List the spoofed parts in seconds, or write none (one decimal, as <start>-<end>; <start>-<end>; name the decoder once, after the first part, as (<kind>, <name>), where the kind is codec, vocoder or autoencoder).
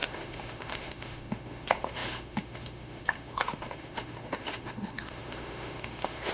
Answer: 0.0-6.3 (autoencoder, DAC-VAE)